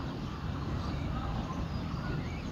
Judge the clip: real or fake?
fake